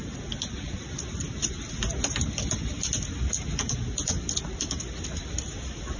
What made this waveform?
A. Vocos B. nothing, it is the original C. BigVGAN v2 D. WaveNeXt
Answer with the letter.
B